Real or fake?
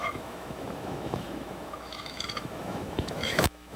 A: fake